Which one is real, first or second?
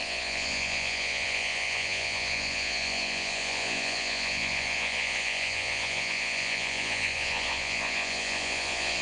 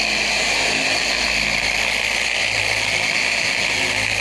second